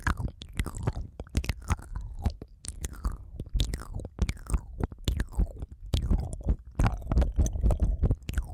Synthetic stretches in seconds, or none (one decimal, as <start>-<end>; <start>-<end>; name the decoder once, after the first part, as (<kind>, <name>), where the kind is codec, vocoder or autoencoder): 0.0-1.4 (vocoder, BigVGAN v2); 5.7-8.5